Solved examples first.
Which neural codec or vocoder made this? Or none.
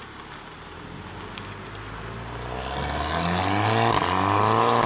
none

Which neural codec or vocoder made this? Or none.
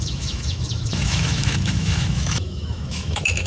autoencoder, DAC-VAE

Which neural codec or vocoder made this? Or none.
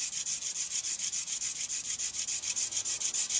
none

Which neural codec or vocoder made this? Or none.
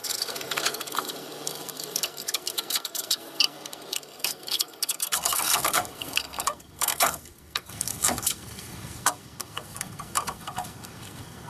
codec, SNAC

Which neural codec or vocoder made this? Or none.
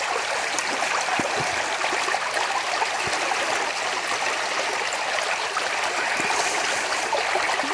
none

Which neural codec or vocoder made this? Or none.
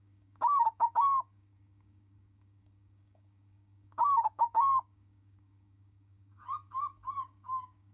codec, DAC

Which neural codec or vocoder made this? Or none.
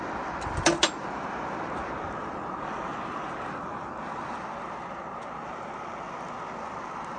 none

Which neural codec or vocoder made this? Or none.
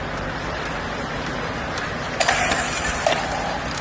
none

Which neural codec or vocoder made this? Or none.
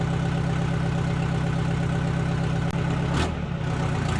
none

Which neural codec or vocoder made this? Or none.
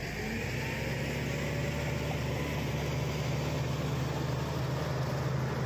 none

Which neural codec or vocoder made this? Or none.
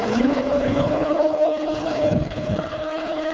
codec, HILCodec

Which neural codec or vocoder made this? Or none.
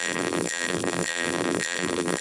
vocoder, BigVGAN v2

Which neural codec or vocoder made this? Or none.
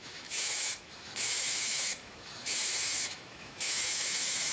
autoencoder, DAC-VAE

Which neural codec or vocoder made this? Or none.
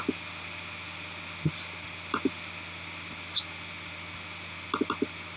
none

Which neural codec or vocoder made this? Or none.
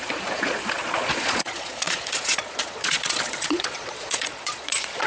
vocoder, Vocos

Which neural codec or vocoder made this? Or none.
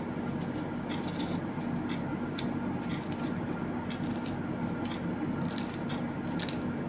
none